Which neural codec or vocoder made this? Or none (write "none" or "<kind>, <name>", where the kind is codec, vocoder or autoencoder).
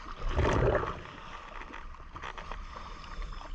none